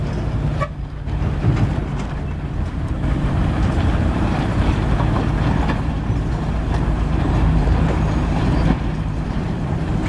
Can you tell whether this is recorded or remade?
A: remade